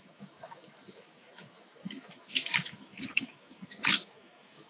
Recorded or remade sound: remade